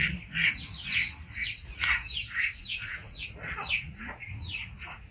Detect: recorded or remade remade